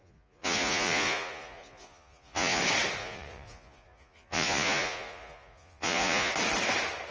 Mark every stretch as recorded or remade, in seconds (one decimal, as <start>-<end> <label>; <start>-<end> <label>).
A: 0.0-2.6 remade; 2.6-3.0 recorded; 3.0-6.3 remade; 6.3-7.1 recorded

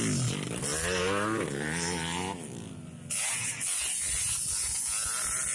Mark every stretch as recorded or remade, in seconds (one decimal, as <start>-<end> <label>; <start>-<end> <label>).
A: 0.0-5.5 recorded

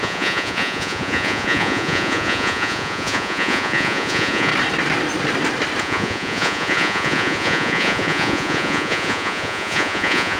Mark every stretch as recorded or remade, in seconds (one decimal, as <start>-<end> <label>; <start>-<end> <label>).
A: 0.0-4.5 remade; 4.5-5.8 recorded; 5.8-10.4 remade